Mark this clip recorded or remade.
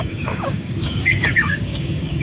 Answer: remade